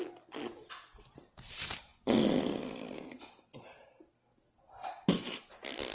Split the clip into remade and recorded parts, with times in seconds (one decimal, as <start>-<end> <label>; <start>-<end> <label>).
0.0-5.9 recorded